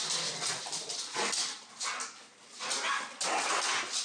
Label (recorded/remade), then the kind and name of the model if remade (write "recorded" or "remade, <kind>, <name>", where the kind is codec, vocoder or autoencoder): recorded